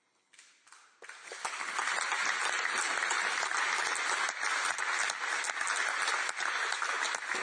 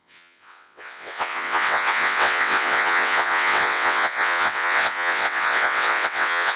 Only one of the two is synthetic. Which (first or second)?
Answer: second